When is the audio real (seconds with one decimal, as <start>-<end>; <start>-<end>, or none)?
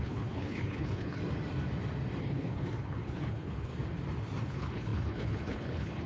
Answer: 1.2-2.2; 3.7-4.4